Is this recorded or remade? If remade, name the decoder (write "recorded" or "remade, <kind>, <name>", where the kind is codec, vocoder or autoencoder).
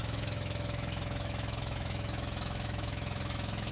remade, autoencoder, DAC-VAE